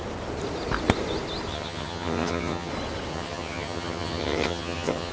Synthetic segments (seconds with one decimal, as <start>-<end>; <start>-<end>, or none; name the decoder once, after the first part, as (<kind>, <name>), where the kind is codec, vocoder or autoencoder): 1.5-2.7 (vocoder, HiFi-GAN); 3.1-5.1